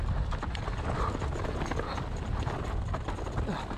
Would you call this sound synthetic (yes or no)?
no